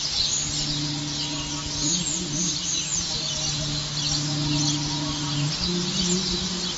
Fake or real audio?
real